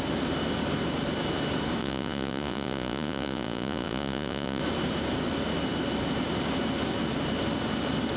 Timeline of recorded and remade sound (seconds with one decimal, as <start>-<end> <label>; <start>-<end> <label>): 0.0-1.8 recorded; 1.8-4.6 remade; 4.6-8.2 recorded

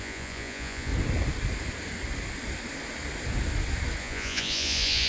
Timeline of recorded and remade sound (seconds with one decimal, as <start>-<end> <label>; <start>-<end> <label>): 0.0-0.9 remade; 0.9-4.0 recorded; 4.0-5.1 remade

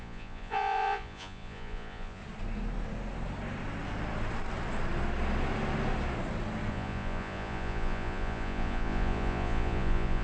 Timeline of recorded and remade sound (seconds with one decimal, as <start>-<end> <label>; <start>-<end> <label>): 0.0-2.2 remade; 2.2-6.7 recorded; 6.7-10.2 remade

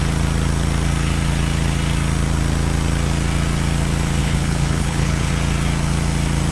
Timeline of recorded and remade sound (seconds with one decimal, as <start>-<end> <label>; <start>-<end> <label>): 0.0-4.2 recorded; 4.2-5.3 remade; 5.3-6.5 recorded

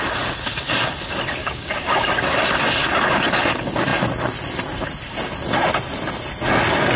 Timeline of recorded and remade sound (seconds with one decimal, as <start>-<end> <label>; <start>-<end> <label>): 0.0-1.4 recorded; 1.4-2.1 remade; 2.1-7.0 recorded

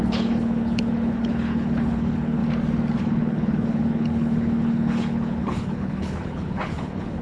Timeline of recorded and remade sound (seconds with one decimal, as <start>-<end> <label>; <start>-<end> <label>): 0.0-2.4 remade; 2.4-3.0 recorded; 3.0-7.2 remade

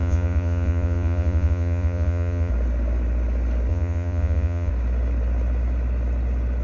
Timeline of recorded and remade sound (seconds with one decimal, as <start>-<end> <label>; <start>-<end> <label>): 0.0-2.5 remade; 2.5-3.7 recorded; 3.7-4.7 remade; 4.7-6.6 recorded